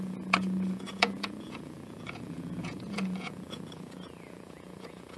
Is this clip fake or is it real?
fake